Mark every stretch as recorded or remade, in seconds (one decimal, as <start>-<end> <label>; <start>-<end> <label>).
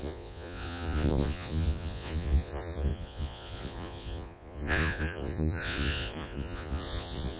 0.0-7.4 remade